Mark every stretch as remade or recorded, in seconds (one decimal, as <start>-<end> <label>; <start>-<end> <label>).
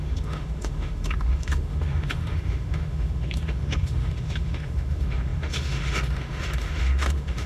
0.0-7.5 remade